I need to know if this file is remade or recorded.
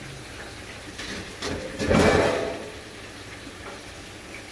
recorded